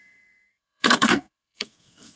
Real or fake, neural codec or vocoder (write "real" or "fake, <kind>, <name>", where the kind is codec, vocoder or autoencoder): fake, codec, SNAC